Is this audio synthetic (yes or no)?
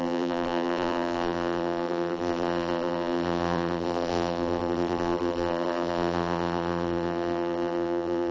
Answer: yes